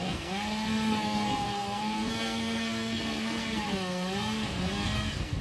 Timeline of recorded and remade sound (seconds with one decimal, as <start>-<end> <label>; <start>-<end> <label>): 0.0-5.4 remade